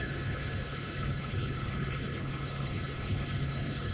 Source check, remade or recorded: remade